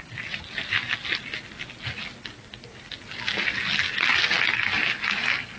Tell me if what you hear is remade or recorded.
recorded